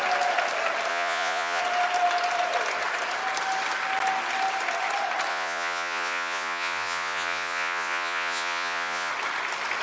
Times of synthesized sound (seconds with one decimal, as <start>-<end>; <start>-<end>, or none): 0.9-1.6; 5.3-9.1